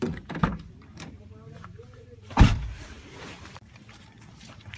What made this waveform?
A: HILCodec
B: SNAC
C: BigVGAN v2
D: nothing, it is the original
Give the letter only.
C